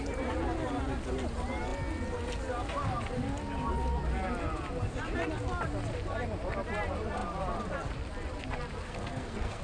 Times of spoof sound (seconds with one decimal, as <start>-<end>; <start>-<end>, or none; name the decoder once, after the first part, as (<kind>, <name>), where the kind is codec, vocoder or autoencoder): 8.8-9.6 (codec, SNAC)